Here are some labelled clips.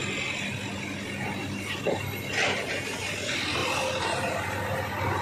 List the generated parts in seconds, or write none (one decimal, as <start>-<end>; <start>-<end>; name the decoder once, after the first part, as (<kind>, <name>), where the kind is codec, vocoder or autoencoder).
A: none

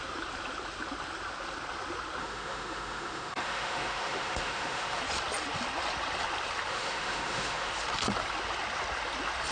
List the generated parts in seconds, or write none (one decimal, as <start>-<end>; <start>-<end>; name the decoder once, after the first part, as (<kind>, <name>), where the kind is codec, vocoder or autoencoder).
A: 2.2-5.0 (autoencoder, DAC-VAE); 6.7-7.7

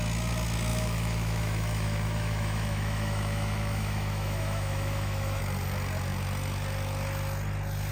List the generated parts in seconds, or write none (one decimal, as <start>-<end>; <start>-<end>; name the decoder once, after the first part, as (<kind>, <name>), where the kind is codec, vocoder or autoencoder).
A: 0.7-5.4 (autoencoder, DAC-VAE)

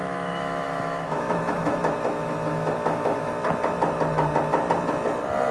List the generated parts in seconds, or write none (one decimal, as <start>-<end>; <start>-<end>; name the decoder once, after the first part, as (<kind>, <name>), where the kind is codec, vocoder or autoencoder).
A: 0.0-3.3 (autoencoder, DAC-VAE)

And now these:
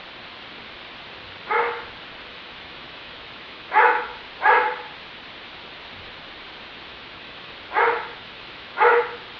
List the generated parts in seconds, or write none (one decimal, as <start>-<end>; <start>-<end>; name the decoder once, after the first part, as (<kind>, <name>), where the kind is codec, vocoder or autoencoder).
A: 2.3-4.2 (autoencoder, DAC-VAE); 6.9-7.5; 8.2-9.0